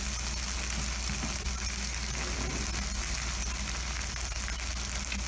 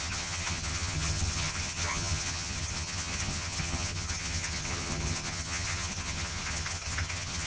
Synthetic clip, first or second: second